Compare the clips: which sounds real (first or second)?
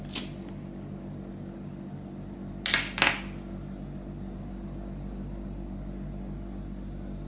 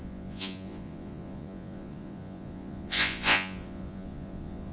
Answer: first